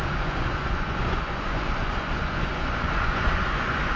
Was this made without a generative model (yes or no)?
no